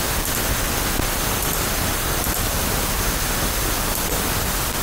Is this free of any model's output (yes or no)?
yes